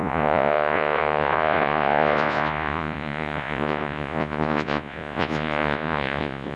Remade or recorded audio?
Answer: remade